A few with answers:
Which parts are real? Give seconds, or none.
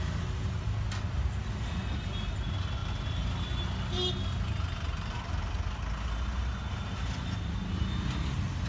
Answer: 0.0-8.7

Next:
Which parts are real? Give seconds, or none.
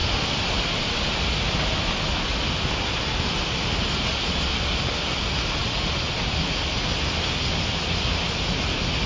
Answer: 0.0-9.1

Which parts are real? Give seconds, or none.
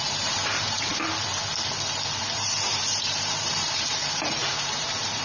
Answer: 0.9-2.2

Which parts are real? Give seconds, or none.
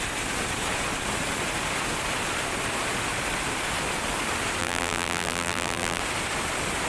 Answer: 0.0-4.6; 6.0-6.9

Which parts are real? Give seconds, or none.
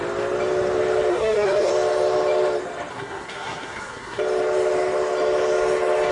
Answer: 0.0-1.1; 1.7-2.9; 4.2-6.1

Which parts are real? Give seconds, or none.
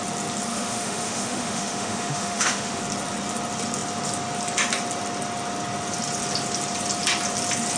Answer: 0.0-0.5; 2.8-7.8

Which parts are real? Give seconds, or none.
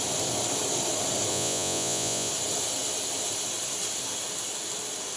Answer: 0.0-1.3; 2.3-5.2